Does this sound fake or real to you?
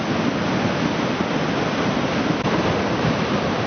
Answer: real